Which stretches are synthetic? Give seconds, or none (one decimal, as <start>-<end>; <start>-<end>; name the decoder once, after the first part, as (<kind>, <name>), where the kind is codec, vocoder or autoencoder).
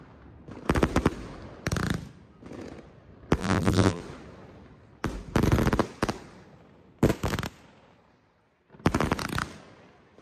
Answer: 3.4-4.0 (vocoder, BigVGAN v2)